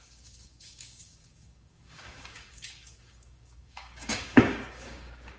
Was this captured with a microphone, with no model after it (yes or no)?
no